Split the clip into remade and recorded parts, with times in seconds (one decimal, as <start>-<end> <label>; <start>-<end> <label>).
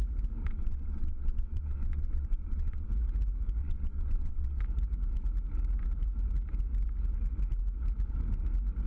0.0-0.4 recorded; 0.4-2.9 remade; 2.9-3.6 recorded; 3.6-4.6 remade; 4.6-8.9 recorded